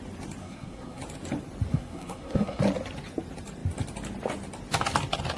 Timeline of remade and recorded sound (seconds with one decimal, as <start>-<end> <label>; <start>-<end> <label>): 0.0-0.4 recorded; 0.4-1.0 remade; 1.0-1.7 recorded; 1.7-2.6 remade; 2.6-5.4 recorded